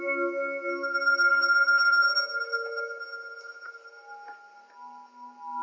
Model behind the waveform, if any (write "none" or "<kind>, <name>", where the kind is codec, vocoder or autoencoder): none